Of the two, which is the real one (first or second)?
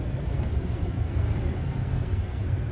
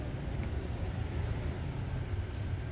second